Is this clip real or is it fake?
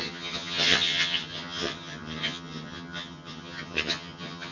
fake